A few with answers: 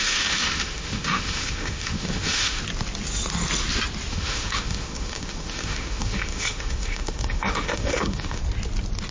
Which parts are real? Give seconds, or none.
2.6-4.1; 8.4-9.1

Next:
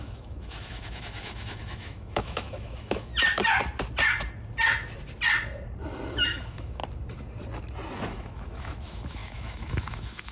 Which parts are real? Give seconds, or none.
3.1-6.2; 6.8-8.0

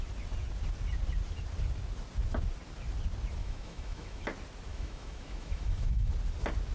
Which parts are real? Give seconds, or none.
0.0-3.4; 4.2-4.7; 6.1-6.7

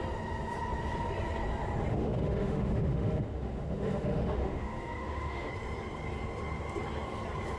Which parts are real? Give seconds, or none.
0.0-1.9; 5.5-7.6

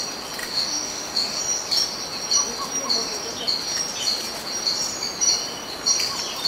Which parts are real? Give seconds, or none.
0.0-0.4; 1.4-6.5